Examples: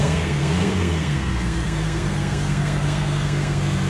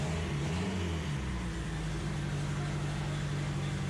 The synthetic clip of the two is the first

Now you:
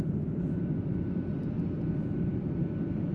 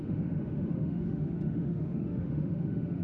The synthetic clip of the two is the second